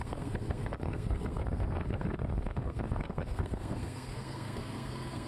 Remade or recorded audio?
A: remade